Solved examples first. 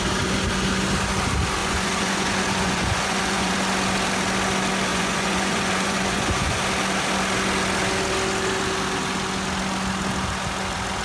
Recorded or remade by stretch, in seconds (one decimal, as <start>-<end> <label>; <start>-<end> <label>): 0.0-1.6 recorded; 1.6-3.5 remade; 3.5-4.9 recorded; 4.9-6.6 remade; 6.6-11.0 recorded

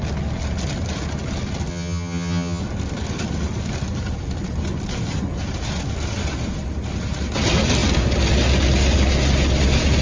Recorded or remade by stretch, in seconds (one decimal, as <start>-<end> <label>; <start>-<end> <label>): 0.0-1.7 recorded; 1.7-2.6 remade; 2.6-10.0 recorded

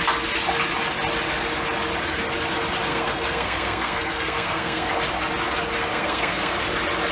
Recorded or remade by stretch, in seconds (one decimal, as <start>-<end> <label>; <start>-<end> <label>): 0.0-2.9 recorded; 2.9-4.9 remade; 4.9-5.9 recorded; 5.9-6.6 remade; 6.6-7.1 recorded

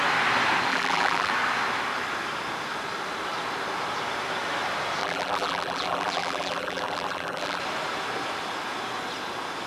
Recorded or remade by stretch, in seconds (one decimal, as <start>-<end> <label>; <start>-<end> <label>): 0.0-0.7 recorded; 0.7-1.3 remade; 1.3-5.0 recorded; 5.0-7.6 remade; 7.6-9.7 recorded

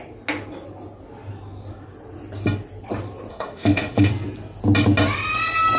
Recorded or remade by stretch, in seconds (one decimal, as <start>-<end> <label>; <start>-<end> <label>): 0.0-3.3 recorded; 3.3-4.1 remade; 4.1-5.8 recorded

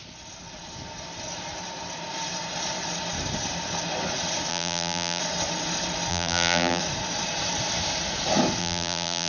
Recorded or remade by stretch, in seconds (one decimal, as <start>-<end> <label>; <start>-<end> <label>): 0.0-4.5 recorded; 4.5-5.2 remade; 5.2-6.1 recorded; 6.1-6.8 remade; 6.8-8.6 recorded; 8.6-9.3 remade

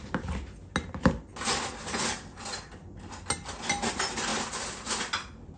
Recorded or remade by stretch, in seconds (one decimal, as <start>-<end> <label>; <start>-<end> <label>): 0.0-5.6 recorded

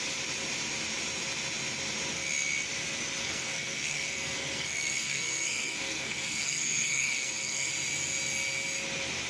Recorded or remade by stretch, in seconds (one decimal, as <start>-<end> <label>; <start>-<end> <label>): 0.0-3.2 recorded; 3.2-7.7 remade; 7.7-9.3 recorded